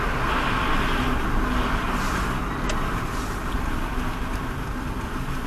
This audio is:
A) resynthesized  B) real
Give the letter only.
B